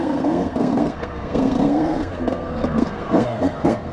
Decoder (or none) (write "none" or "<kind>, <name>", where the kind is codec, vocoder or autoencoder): codec, SNAC